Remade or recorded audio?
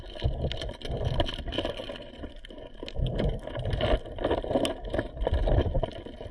recorded